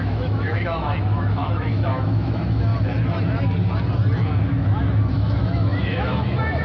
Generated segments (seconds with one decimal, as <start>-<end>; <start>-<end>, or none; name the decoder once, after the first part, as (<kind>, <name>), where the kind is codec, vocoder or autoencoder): 0.0-2.7 (autoencoder, DAC-VAE); 5.1-6.6